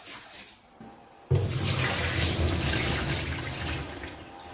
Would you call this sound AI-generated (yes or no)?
no